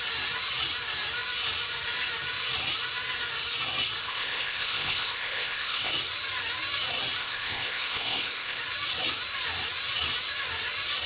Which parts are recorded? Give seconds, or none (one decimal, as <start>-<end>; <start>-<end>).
0.0-4.0; 5.9-7.2; 8.6-11.1